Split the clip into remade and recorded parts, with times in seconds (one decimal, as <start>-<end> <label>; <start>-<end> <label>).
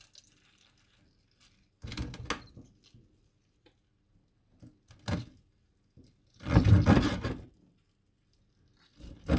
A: 0.0-9.4 recorded